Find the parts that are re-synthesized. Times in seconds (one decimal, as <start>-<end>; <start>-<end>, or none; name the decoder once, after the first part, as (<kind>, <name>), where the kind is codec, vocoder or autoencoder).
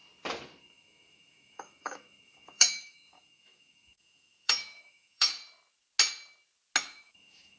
0.6-5.3 (autoencoder, DAC-VAE); 6.8-7.6